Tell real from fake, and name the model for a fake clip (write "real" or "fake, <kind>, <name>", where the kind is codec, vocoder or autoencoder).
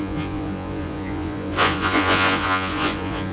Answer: fake, vocoder, Vocos